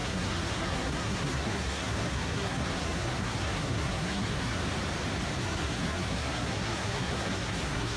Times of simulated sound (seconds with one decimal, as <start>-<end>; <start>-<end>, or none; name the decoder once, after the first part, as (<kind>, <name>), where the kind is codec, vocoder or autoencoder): 0.0-4.6 (codec, SNAC); 5.4-8.0